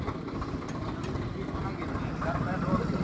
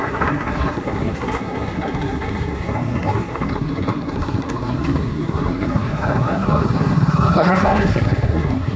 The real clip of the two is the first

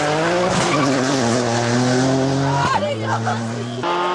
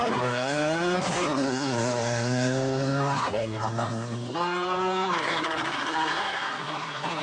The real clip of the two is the first